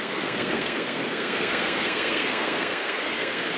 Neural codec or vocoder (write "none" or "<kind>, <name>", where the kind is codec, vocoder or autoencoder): codec, SNAC